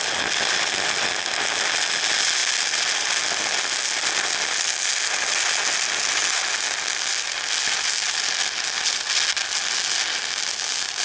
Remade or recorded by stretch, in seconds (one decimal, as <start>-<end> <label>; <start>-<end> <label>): 0.0-11.0 recorded

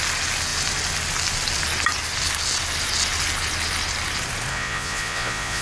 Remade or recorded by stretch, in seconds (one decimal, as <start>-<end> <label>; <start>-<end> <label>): 0.0-4.5 recorded; 4.5-5.6 remade

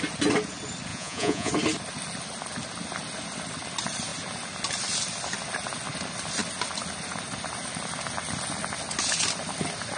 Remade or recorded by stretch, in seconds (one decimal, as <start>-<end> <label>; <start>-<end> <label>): 0.0-0.9 recorded; 0.9-1.5 remade; 1.5-10.0 recorded

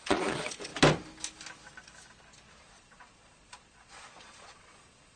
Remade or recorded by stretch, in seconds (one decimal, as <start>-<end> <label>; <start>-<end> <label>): 0.0-0.7 remade; 0.7-2.6 recorded; 2.6-5.2 remade